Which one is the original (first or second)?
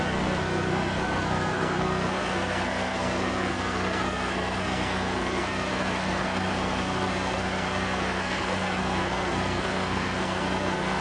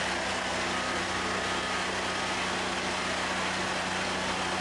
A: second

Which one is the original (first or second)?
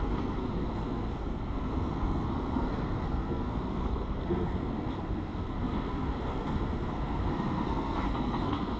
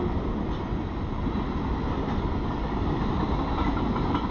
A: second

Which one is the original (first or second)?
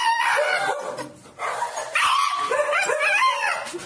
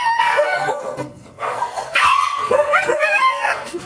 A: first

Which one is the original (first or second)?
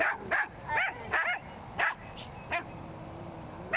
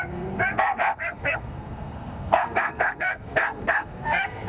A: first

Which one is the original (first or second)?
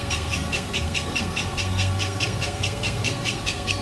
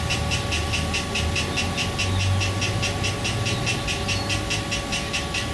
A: second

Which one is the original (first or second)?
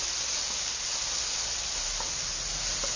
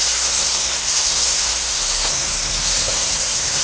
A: first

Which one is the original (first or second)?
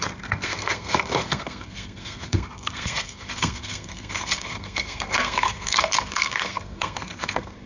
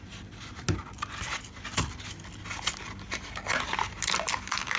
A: second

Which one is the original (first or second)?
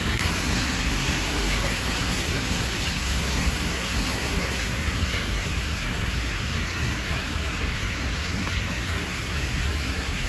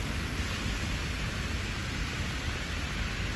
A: second